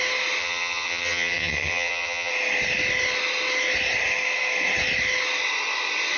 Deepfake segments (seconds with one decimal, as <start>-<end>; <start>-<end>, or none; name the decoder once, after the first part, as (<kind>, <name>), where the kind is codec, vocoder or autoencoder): 0.4-2.3 (vocoder, HiFi-GAN)

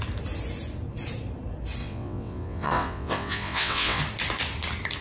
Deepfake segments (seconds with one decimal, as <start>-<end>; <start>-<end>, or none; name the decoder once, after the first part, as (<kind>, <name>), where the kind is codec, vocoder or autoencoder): 1.8-4.0 (vocoder, WaveNeXt)

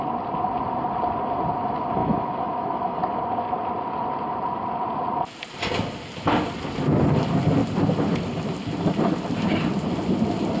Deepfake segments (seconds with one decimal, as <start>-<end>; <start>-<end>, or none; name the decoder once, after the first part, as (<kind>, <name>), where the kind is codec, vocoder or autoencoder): 2.0-3.0 (autoencoder, DAC-VAE)

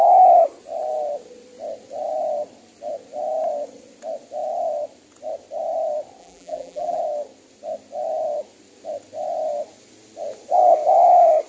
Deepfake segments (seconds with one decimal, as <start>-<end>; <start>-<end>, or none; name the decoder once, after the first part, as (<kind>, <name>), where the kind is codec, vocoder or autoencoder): 6.2-7.0 (vocoder, BigVGAN v2)

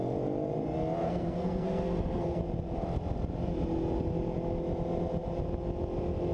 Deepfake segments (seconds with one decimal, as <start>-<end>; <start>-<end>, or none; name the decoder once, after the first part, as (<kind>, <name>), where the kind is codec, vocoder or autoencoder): 1.0-2.4 (codec, SNAC)